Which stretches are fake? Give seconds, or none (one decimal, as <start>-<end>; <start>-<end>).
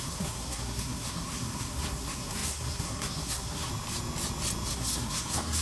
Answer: 0.0-3.7; 4.7-5.6